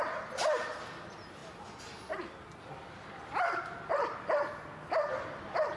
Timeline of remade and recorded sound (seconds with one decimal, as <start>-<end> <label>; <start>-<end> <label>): 0.0-5.8 recorded